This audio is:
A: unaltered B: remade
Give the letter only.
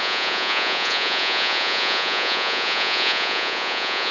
B